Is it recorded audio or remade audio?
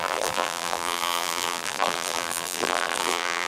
remade